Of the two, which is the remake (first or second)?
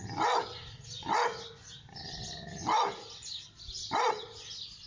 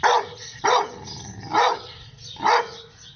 second